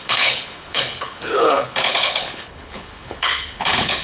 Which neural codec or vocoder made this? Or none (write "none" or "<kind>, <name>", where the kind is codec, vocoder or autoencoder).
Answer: codec, HILCodec